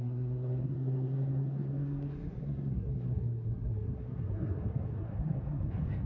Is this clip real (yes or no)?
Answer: no